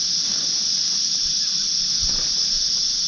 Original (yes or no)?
yes